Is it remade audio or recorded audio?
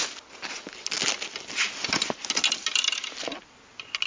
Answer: recorded